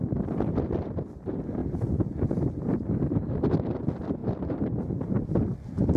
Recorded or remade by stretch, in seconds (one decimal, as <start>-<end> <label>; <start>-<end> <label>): 0.0-1.6 recorded; 1.6-3.5 remade; 3.5-4.2 recorded; 4.2-4.8 remade; 4.8-6.0 recorded